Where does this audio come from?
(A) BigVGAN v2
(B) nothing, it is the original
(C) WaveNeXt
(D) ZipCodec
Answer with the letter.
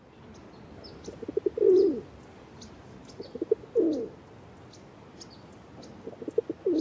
B